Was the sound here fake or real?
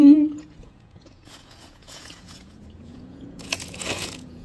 fake